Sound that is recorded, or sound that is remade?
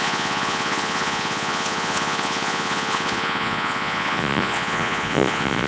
remade